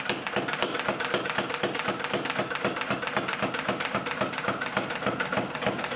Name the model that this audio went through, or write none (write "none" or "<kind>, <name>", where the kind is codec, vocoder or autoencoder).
none